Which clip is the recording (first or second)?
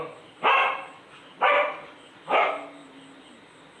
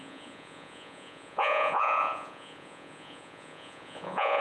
first